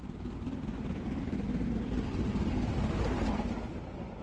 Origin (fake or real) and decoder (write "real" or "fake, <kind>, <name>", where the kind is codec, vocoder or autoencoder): real